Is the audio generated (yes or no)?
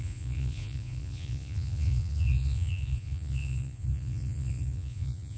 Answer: yes